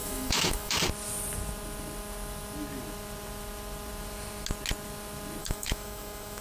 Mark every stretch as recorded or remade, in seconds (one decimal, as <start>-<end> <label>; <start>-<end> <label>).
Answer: 0.0-0.7 remade; 0.7-5.4 recorded; 5.4-6.4 remade